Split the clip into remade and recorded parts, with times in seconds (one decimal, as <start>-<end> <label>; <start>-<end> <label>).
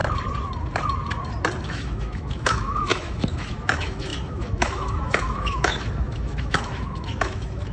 0.0-1.6 recorded; 1.6-7.7 remade